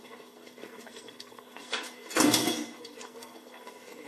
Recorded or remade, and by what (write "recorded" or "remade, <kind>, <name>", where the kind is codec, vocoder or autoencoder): remade, codec, SNAC